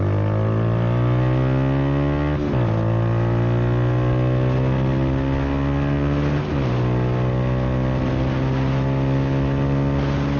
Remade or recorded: recorded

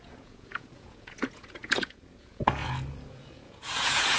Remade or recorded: remade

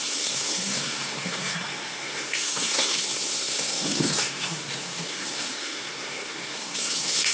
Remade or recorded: remade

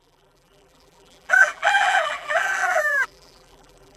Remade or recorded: remade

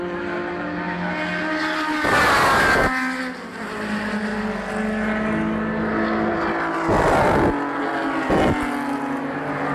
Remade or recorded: recorded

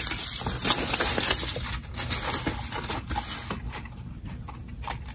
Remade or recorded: recorded